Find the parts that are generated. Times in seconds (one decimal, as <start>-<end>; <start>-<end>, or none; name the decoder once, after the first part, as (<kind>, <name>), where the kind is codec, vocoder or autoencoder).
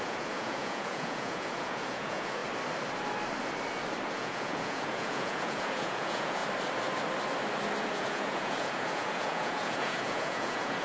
0.0-2.4 (vocoder, Vocos); 4.1-6.4; 7.8-10.8